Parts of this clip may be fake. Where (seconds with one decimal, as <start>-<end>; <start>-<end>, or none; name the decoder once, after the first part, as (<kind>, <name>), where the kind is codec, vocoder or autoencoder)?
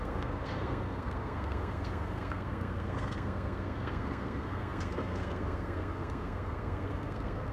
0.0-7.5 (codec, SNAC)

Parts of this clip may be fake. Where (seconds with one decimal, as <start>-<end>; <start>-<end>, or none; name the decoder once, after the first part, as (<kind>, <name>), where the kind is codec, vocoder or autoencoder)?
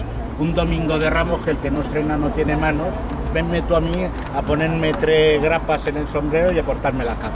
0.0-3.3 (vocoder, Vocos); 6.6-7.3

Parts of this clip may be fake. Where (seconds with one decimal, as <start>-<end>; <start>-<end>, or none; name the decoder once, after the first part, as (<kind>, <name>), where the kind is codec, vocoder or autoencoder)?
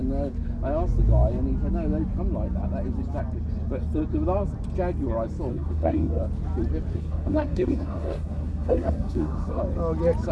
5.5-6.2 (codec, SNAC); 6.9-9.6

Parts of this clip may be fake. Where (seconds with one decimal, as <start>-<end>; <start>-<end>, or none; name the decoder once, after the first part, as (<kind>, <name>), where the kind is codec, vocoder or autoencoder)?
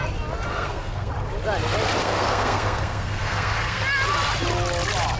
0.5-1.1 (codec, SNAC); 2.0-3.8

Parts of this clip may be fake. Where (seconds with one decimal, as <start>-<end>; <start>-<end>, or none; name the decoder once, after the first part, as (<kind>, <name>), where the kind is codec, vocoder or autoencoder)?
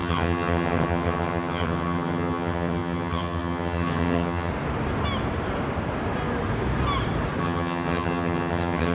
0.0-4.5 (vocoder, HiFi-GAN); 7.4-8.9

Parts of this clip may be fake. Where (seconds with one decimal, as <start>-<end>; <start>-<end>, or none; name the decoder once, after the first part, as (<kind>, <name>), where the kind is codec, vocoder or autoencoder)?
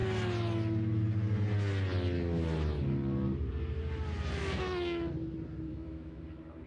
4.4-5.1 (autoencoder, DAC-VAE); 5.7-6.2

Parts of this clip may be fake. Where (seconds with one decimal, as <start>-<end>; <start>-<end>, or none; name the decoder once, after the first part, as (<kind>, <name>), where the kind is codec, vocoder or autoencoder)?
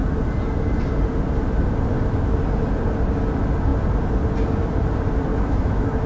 5.3-6.1 (autoencoder, DAC-VAE)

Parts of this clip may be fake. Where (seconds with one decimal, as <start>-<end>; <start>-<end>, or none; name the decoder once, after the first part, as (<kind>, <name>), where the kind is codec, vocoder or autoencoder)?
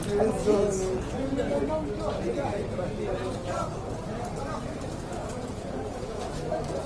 0.4-1.7 (vocoder, Vocos); 5.2-6.2